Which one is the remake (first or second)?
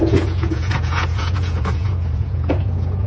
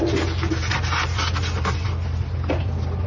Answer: first